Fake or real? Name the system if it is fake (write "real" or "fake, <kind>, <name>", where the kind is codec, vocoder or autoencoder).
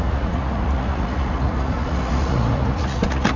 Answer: fake, vocoder, Vocos